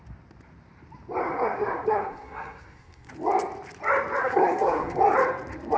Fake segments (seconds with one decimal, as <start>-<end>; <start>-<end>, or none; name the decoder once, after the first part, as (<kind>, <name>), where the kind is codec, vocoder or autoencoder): 1.2-3.1 (codec, SNAC); 4.2-5.0